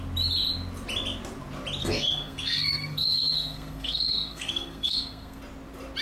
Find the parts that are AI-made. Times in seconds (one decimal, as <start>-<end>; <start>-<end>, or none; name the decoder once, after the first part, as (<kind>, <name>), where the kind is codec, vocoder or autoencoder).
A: 1.8-5.4 (codec, SNAC)